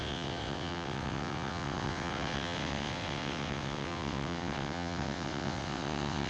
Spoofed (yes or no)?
yes